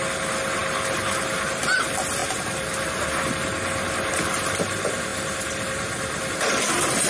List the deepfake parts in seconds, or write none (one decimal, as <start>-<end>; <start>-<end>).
none